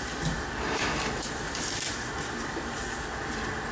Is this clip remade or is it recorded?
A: recorded